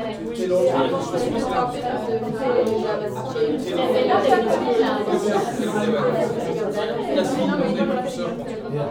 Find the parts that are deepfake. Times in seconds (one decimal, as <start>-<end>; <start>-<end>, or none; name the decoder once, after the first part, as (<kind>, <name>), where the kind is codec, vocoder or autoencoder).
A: 3.6-6.4 (vocoder, BigVGAN v2)